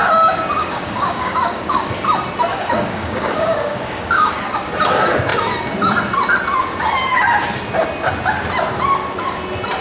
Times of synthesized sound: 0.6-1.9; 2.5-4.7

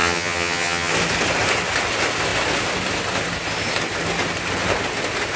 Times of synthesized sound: 0.0-0.9

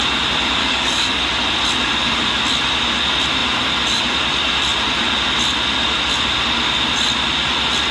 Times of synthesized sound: 0.6-1.2

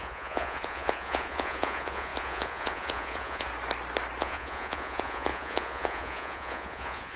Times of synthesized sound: 0.0-3.5; 4.2-7.2

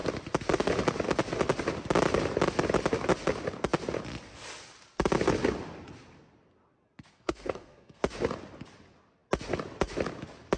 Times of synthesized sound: 7.1-8.0

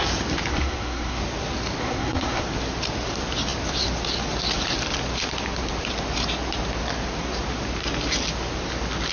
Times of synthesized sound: 0.5-1.2; 1.8-2.4

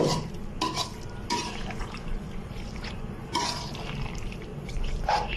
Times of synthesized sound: 1.2-3.5; 4.5-5.4